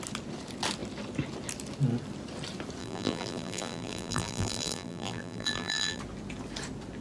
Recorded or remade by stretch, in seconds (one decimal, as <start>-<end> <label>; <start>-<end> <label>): 0.0-2.8 recorded; 2.8-6.0 remade; 6.0-7.0 recorded